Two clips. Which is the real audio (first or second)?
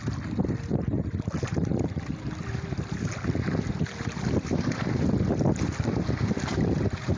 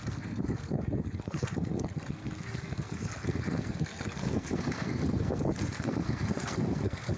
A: first